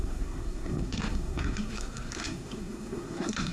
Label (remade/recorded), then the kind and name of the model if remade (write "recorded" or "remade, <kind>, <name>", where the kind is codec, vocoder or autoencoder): remade, codec, SNAC